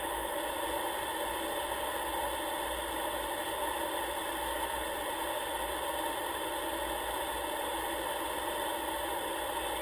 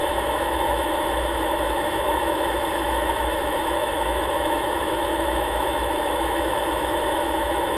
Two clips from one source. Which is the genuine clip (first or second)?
first